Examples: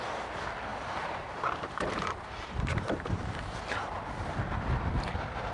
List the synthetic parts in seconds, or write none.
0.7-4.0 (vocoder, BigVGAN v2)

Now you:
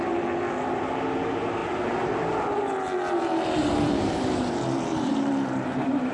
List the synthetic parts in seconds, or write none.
3.6-4.5 (vocoder, BigVGAN v2); 4.9-6.1

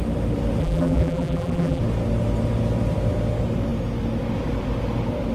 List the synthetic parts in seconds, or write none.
0.6-1.8 (vocoder, BigVGAN v2)